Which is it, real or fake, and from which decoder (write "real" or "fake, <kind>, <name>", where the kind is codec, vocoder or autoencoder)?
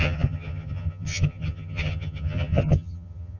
fake, vocoder, HiFi-GAN